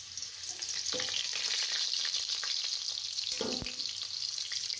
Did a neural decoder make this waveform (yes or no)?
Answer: no